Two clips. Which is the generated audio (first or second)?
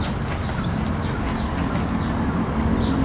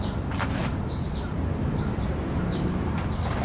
second